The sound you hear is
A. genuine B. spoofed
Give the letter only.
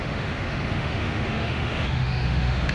B